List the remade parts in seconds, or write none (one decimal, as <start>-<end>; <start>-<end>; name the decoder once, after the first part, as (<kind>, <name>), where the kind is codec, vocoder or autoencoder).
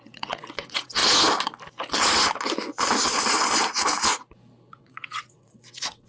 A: 0.0-1.0 (vocoder, WaveNeXt); 4.7-6.1